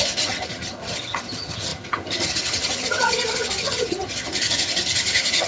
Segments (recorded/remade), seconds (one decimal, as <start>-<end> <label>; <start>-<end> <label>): 0.0-5.5 remade

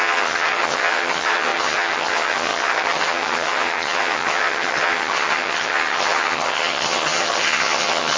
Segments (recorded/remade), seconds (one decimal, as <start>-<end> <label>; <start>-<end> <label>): 0.0-8.2 remade